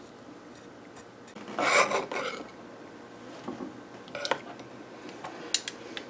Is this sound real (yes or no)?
yes